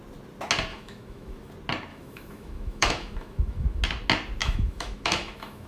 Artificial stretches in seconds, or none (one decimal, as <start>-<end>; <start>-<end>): 0.7-1.5; 1.9-3.8; 4.4-5.7